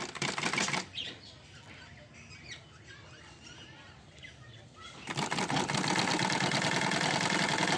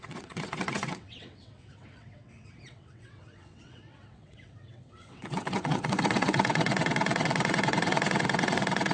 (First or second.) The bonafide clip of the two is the first